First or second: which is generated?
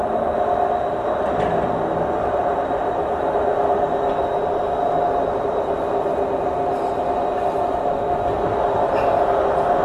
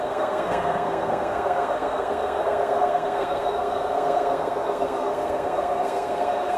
second